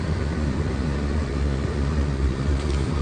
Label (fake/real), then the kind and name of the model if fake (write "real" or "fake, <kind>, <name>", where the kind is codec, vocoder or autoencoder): fake, vocoder, Vocos